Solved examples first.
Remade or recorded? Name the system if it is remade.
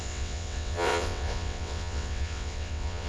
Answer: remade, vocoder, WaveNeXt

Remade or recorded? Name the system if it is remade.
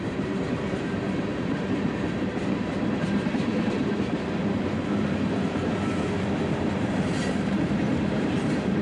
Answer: remade, vocoder, BigVGAN v2